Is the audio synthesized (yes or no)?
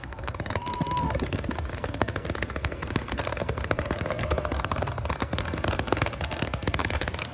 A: yes